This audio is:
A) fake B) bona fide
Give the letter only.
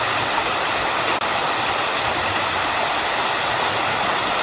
B